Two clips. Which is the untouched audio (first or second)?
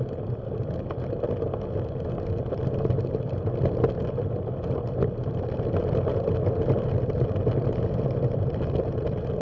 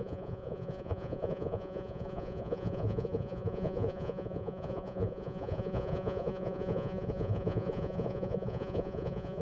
first